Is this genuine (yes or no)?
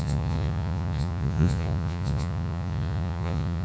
no